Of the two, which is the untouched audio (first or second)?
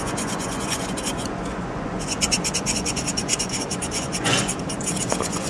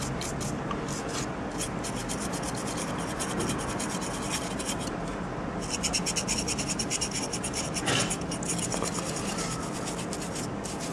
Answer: second